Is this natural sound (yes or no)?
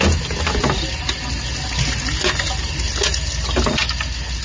yes